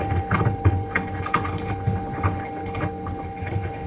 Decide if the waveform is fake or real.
fake